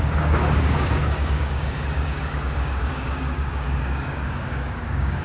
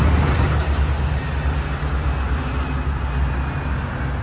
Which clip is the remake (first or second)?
first